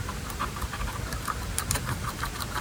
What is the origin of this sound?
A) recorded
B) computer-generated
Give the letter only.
B